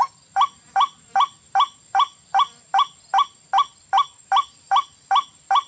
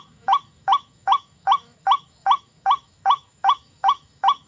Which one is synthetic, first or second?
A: second